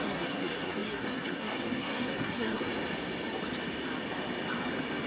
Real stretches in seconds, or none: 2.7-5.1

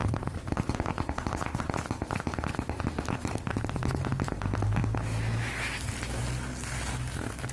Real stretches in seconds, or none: 1.7-7.5

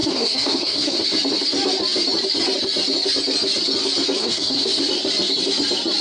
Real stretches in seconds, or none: 1.0-4.2; 4.8-6.0